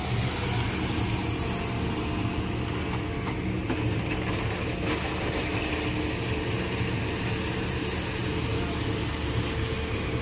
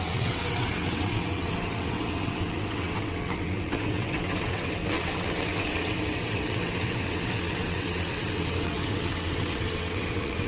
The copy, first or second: second